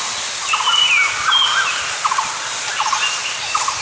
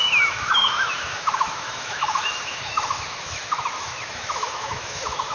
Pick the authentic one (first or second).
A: first